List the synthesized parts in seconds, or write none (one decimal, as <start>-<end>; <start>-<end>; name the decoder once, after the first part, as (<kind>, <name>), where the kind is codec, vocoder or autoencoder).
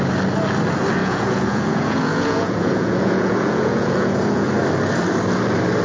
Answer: 1.0-4.5 (vocoder, Vocos)